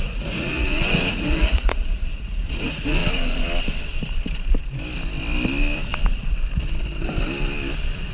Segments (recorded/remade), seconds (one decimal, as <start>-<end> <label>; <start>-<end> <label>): 0.0-3.0 remade; 3.0-8.1 recorded